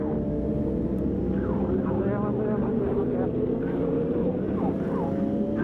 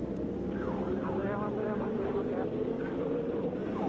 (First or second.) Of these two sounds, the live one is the first